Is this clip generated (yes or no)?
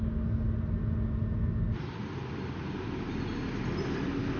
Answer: no